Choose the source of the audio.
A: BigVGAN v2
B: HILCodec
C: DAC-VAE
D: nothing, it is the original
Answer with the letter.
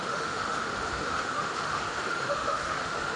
C